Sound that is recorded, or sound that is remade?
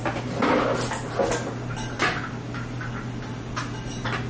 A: recorded